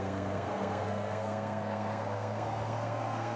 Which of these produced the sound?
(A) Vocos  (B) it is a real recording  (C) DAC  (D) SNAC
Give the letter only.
D